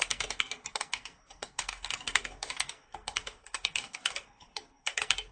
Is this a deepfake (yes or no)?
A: yes